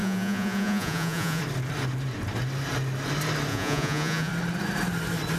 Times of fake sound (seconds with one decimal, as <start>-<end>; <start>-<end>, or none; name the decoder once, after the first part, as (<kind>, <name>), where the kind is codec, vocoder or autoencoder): 0.0-1.4 (vocoder, Vocos); 3.5-4.3